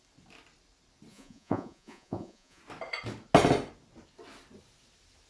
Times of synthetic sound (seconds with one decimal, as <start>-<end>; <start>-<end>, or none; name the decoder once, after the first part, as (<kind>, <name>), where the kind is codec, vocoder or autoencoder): 1.1-2.6 (vocoder, Vocos)